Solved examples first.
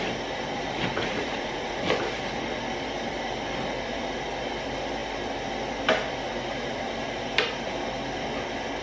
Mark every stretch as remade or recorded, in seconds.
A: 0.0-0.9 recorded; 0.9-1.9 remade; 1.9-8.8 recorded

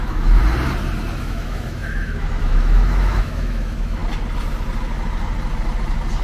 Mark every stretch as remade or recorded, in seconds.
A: 0.0-0.4 remade; 0.4-1.2 recorded; 1.2-4.0 remade; 4.0-6.2 recorded